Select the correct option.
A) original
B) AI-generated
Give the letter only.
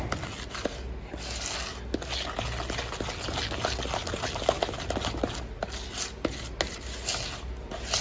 A